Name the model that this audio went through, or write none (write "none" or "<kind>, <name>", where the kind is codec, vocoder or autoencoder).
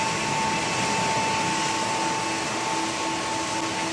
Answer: none